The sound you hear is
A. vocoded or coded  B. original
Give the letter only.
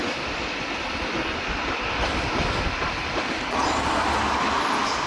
B